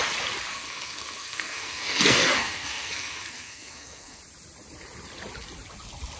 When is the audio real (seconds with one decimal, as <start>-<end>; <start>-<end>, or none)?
0.0-0.5; 4.2-6.2